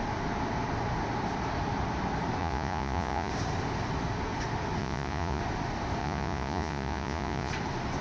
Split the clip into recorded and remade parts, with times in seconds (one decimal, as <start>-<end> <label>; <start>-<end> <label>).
0.0-2.4 recorded; 2.4-3.3 remade; 3.3-4.8 recorded; 4.8-5.4 remade; 5.4-6.0 recorded; 6.0-7.5 remade; 7.5-8.0 recorded